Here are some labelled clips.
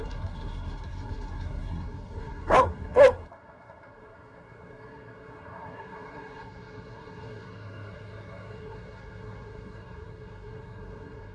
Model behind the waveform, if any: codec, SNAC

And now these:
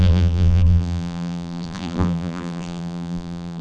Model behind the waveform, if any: vocoder, BigVGAN v2